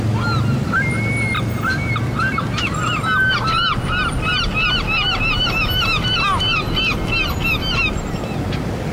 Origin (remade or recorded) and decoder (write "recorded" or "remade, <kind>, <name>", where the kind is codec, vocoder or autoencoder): recorded